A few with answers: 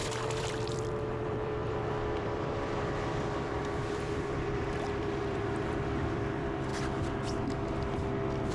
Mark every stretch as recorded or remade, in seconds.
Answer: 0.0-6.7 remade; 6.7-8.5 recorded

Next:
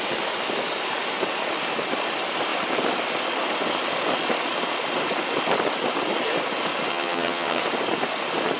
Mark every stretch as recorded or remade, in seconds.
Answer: 0.0-6.9 recorded; 6.9-7.6 remade; 7.6-8.6 recorded

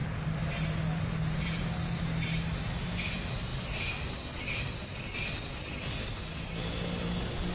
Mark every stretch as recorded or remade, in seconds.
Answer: 0.0-7.5 recorded

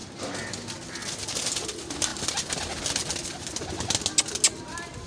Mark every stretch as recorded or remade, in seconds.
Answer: 0.0-5.1 recorded